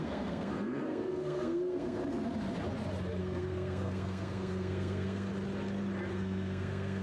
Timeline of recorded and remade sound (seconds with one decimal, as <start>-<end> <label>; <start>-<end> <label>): 0.0-2.0 remade; 2.0-3.2 recorded; 3.2-5.3 remade; 5.3-6.1 recorded; 6.1-7.0 remade